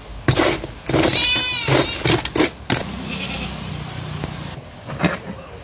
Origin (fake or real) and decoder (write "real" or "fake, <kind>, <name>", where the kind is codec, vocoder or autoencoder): real